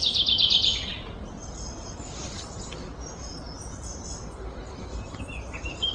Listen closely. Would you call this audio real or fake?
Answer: real